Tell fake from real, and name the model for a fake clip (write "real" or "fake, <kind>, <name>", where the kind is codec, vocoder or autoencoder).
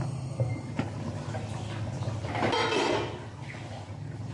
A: real